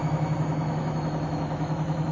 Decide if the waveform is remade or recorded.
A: remade